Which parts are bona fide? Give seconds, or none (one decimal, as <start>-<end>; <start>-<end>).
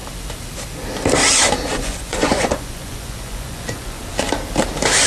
0.0-1.7; 4.0-5.1